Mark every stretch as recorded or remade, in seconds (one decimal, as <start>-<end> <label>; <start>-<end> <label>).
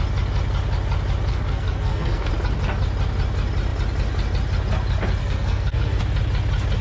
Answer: 0.0-1.3 recorded; 1.3-2.3 remade; 2.3-5.2 recorded; 5.2-6.0 remade; 6.0-6.8 recorded